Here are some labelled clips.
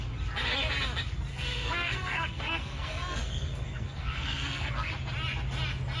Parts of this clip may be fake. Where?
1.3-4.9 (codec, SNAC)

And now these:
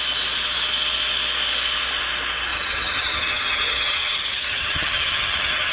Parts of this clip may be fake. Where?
2.5-5.7 (vocoder, HiFi-GAN)

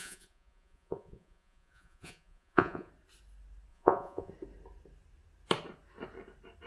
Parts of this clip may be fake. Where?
0.0-2.9 (vocoder, Vocos); 3.7-4.3

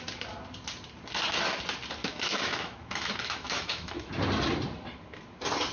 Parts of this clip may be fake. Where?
2.0-4.1 (autoencoder, DAC-VAE)

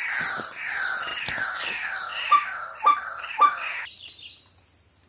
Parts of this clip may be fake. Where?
none